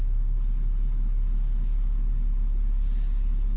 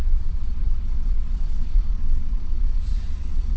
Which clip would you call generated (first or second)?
second